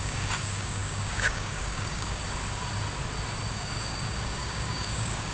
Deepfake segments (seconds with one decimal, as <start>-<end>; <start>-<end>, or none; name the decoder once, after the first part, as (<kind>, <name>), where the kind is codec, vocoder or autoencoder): 0.0-2.2 (codec, DAC); 3.5-5.3